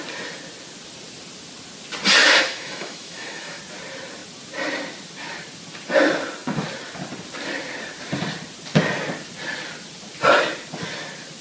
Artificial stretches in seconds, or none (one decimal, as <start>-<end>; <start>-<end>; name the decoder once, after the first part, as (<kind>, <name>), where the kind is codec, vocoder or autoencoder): 2.2-3.6 (autoencoder, DAC-VAE)